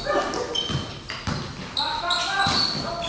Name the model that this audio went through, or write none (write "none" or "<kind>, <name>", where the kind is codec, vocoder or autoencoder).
none